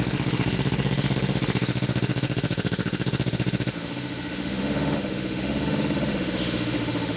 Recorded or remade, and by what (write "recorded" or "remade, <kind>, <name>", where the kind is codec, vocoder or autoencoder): remade, autoencoder, DAC-VAE